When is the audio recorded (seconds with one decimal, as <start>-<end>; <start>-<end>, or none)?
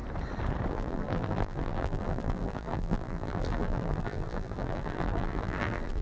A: 0.0-0.7